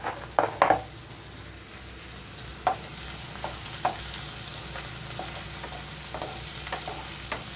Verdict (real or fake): real